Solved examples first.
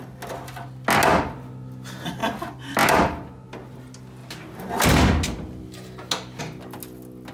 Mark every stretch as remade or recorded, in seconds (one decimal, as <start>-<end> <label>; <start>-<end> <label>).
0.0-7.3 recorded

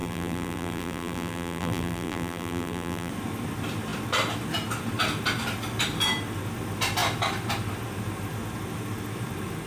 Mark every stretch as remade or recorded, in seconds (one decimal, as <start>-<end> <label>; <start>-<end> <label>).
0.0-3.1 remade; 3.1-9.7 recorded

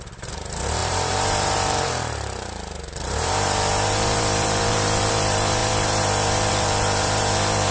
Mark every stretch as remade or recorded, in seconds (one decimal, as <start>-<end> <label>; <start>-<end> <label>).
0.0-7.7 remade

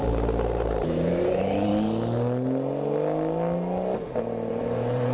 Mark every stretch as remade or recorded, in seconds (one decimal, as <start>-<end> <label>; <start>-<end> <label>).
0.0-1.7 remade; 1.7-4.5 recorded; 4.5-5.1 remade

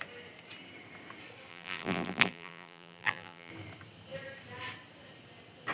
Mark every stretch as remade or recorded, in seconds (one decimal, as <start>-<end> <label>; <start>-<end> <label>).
0.0-1.5 recorded; 1.5-3.5 remade; 3.5-5.7 recorded